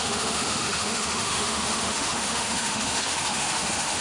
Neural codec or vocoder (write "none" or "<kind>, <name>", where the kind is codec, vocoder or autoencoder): autoencoder, DAC-VAE